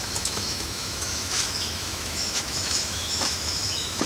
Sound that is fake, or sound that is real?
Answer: fake